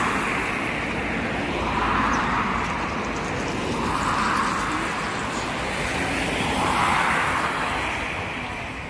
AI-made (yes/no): no